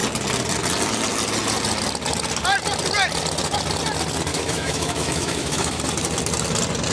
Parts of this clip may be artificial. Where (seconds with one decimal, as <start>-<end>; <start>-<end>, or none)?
4.3-5.8